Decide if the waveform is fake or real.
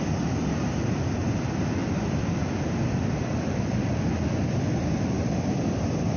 real